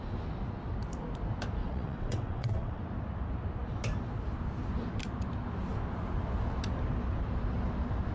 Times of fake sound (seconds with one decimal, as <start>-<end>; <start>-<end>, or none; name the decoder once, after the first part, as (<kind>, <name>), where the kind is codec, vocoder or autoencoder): 1.6-2.8 (vocoder, WaveNeXt)